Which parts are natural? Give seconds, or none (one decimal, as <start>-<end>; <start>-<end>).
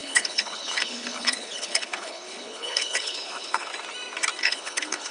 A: 3.7-4.4